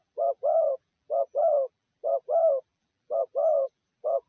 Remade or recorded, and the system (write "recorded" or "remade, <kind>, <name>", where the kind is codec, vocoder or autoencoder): remade, vocoder, BigVGAN v2